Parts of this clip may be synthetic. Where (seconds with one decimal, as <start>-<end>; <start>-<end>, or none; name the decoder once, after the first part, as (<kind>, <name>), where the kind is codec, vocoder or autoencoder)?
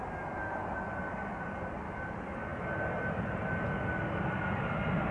none